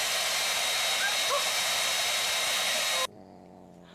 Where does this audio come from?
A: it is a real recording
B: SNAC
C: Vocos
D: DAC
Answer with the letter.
A